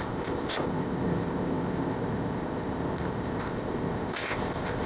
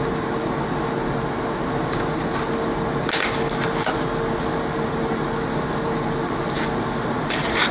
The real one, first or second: second